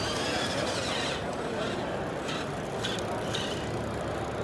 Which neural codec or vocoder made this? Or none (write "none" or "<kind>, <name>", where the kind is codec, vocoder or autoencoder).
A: none